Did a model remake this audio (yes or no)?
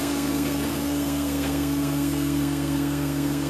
yes